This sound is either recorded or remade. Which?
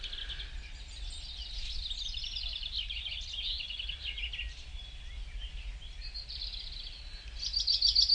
recorded